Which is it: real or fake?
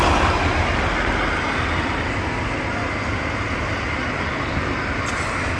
real